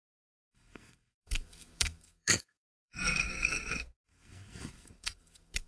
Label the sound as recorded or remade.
remade